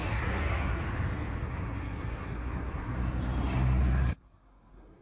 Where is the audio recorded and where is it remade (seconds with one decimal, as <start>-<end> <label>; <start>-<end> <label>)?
0.0-0.8 remade; 0.8-1.4 recorded; 1.4-2.9 remade; 2.9-3.8 recorded; 3.8-5.0 remade